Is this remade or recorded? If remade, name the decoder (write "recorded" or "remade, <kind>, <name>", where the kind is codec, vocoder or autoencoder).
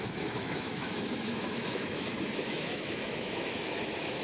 remade, autoencoder, DAC-VAE